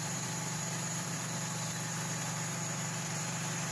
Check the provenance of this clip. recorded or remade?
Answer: remade